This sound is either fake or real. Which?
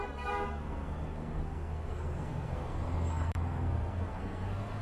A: fake